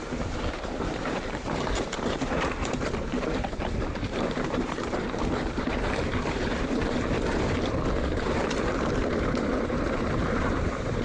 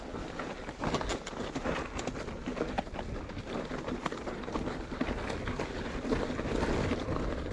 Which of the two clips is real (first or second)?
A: second